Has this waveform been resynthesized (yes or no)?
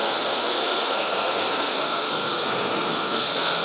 yes